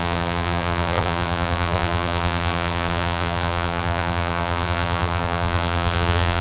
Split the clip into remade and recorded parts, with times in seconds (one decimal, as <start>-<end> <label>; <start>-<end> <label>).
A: 0.0-6.4 remade